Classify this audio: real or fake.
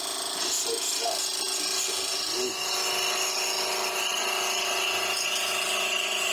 real